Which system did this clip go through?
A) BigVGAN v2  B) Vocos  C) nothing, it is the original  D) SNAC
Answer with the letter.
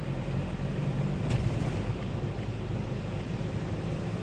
C